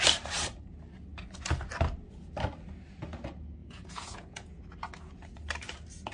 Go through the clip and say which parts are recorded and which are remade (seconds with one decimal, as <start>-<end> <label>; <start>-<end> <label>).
0.0-3.6 recorded; 3.6-4.6 remade; 4.6-6.1 recorded